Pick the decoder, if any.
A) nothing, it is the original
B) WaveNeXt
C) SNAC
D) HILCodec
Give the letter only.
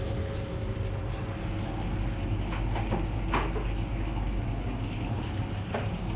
A